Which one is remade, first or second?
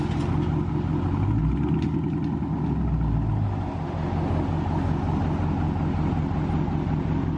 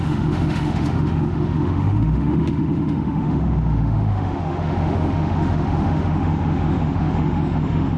second